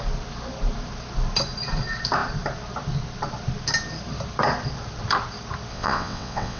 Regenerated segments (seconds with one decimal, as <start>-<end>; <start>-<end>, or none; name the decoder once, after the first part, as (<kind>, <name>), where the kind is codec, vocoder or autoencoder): 5.7-6.6 (vocoder, WaveNeXt)

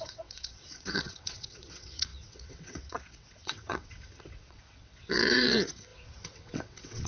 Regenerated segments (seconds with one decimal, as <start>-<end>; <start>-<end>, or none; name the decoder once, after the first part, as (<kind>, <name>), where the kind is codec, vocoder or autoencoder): 0.0-7.1 (vocoder, WaveNeXt)

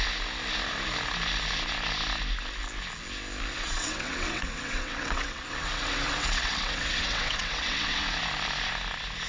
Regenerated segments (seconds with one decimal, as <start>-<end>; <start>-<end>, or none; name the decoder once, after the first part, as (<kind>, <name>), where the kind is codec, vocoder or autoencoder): 3.5-8.2 (vocoder, WaveNeXt)

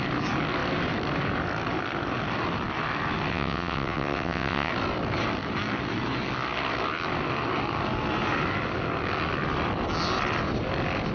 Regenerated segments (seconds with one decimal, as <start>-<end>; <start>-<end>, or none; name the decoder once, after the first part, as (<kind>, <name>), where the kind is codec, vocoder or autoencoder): 3.3-4.7 (vocoder, WaveNeXt)

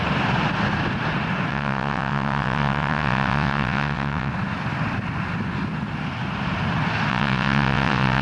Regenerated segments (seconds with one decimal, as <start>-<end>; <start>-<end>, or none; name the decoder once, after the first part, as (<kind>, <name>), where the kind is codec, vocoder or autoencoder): 1.5-4.3 (vocoder, WaveNeXt); 7.1-8.2

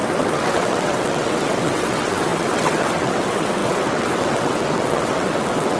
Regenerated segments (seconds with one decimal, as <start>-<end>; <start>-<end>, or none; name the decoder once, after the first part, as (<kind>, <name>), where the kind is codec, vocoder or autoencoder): 0.0-5.8 (vocoder, WaveNeXt)